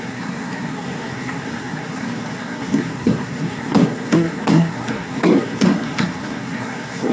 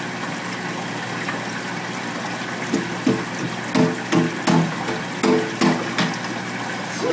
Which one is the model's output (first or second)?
first